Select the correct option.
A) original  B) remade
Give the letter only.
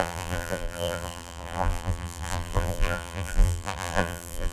B